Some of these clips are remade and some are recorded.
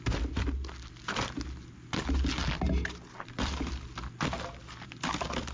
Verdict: recorded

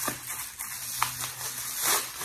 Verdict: recorded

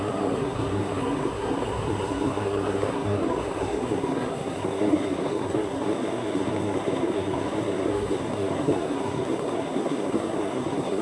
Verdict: remade